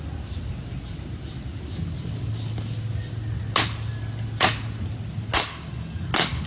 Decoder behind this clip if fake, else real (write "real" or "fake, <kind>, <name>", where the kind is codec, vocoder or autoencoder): real